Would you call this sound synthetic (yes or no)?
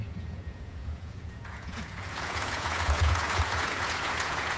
yes